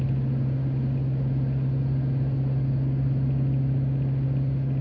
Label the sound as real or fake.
real